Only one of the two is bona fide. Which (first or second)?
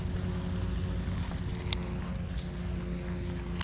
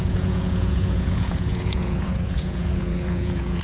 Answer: first